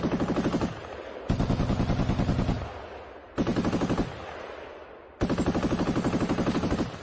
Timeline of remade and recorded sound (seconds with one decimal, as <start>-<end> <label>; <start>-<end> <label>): 0.0-7.0 recorded